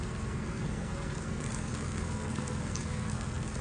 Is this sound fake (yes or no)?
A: yes